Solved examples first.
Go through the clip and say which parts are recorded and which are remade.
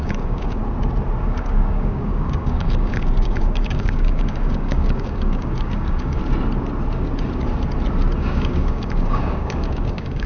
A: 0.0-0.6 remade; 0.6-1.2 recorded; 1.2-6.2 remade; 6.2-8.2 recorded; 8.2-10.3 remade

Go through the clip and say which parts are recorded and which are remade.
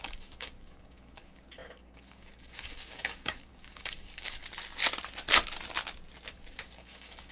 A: 0.0-4.4 remade; 4.4-6.3 recorded; 6.3-7.3 remade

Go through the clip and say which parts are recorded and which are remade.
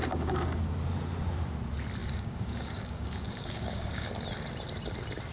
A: 0.0-0.6 remade; 0.6-2.0 recorded; 2.0-4.1 remade; 4.1-5.3 recorded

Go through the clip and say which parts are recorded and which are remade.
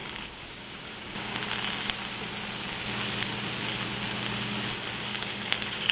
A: 0.0-1.4 remade; 1.4-4.9 recorded; 4.9-5.9 remade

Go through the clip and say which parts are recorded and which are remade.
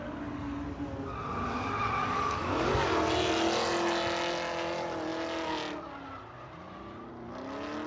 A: 0.0-2.0 recorded; 2.0-2.9 remade; 2.9-7.9 recorded